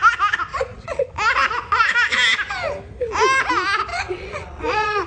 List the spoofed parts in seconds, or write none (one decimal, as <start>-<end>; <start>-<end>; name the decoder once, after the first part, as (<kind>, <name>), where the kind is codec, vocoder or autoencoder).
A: 0.5-1.1 (vocoder, Vocos); 3.9-5.1